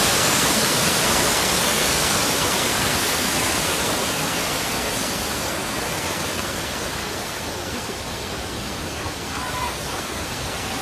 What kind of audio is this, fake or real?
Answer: fake